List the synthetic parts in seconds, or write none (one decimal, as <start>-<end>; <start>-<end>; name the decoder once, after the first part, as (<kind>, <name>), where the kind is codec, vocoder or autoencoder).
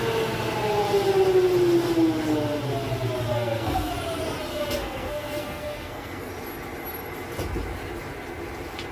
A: 3.3-3.9 (codec, SNAC); 4.5-6.3